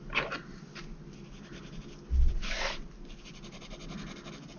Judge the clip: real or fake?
real